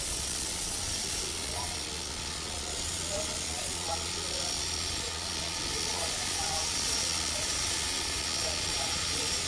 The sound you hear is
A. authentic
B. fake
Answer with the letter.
B